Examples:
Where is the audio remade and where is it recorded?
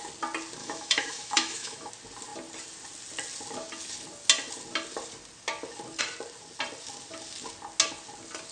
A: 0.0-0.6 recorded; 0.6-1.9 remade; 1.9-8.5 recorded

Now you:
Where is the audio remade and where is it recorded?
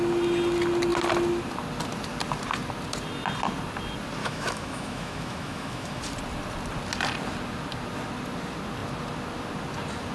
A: 0.0-4.2 recorded; 4.2-6.0 remade; 6.0-10.1 recorded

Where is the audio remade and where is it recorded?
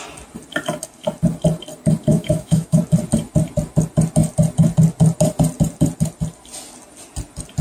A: 0.0-2.1 recorded; 2.1-2.8 remade; 2.8-7.6 recorded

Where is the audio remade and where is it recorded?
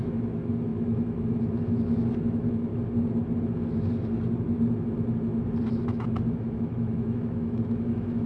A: 0.0-2.7 remade; 2.7-5.8 recorded; 5.8-8.3 remade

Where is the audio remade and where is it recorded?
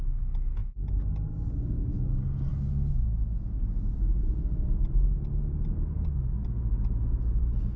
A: 0.0-7.8 recorded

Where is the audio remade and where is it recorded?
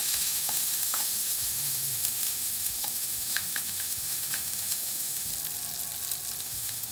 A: 0.0-5.3 remade; 5.3-6.4 recorded; 6.4-6.9 remade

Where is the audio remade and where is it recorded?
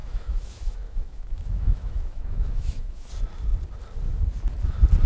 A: 0.0-3.1 remade; 3.1-5.1 recorded